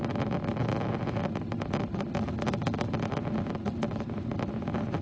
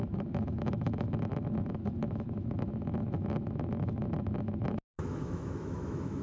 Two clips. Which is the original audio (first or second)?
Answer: first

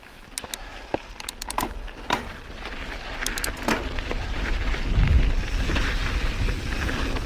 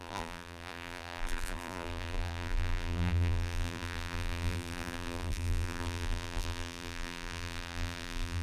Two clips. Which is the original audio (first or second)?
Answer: first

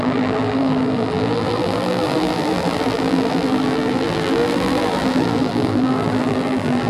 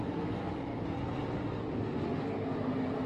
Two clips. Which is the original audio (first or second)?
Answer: second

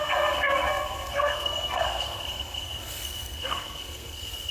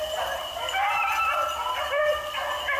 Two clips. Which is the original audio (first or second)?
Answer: second